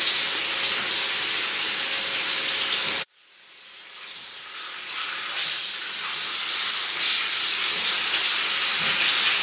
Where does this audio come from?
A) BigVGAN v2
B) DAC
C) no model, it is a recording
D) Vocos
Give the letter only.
C